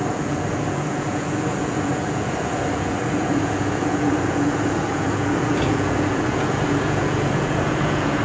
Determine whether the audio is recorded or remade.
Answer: remade